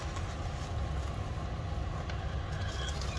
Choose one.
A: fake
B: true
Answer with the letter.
B